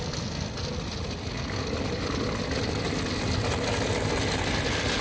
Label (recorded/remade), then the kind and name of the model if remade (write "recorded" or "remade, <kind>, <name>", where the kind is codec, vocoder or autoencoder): recorded